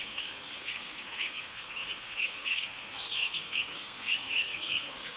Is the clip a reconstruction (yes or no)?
yes